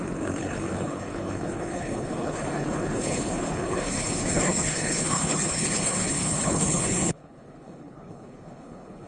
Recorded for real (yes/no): no